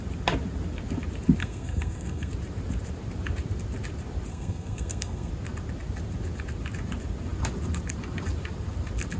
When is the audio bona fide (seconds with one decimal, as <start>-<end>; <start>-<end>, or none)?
0.0-1.4; 2.3-4.3; 5.3-9.2